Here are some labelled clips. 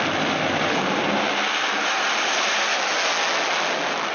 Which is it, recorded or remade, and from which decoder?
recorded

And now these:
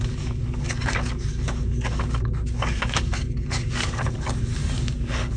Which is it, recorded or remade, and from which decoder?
remade, codec, DAC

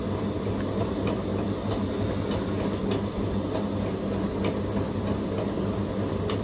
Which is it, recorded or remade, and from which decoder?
recorded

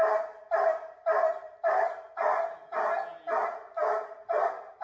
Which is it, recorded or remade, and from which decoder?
recorded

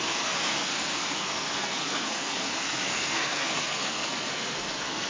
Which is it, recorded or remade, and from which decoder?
remade, codec, SNAC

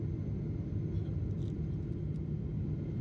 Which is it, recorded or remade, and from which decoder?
recorded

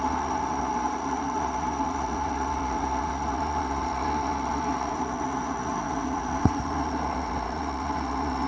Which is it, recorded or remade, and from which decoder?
remade, vocoder, Vocos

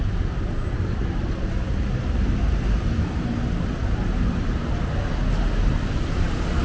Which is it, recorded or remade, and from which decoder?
recorded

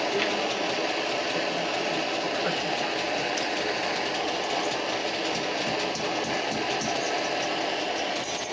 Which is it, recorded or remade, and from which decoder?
recorded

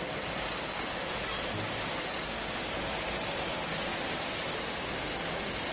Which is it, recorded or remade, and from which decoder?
recorded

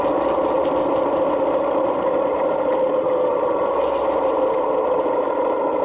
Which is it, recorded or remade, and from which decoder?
recorded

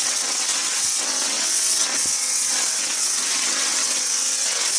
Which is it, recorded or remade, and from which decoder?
remade, vocoder, WaveNeXt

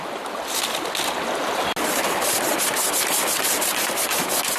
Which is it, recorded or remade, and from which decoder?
recorded